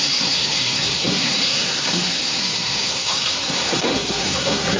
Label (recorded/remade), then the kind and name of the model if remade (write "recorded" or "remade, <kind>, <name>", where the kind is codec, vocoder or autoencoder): remade, codec, SNAC